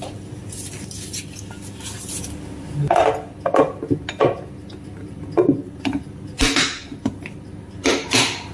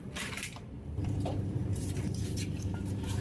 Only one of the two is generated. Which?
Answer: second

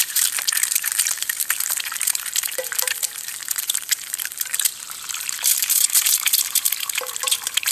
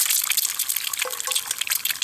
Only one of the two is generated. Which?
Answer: first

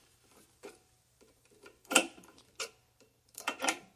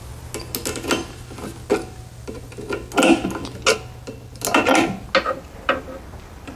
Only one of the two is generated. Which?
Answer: first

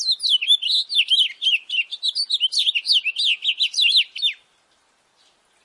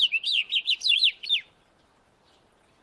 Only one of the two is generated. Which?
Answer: second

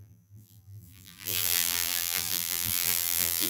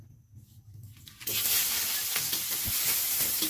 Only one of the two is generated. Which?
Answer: first